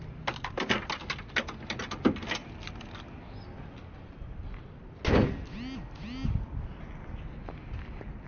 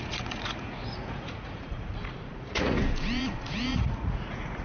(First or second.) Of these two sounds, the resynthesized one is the second